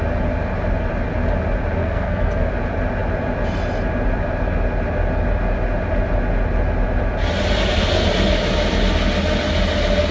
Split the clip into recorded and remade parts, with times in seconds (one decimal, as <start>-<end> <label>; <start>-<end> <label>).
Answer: 0.0-1.8 recorded; 1.8-2.5 remade; 2.5-10.1 recorded